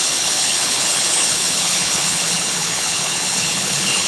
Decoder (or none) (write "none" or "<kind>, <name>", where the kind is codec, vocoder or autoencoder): codec, HILCodec